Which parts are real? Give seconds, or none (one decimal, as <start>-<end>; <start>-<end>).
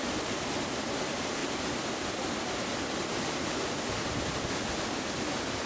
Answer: 0.0-1.4; 4.2-5.7